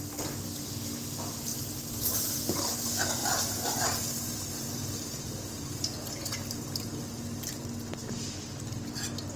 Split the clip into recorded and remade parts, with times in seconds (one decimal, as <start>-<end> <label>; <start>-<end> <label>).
0.0-1.5 recorded; 1.5-2.4 remade; 2.4-3.2 recorded; 3.2-6.9 remade; 6.9-8.0 recorded; 8.0-8.5 remade; 8.5-9.4 recorded